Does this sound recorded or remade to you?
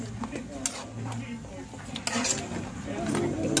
recorded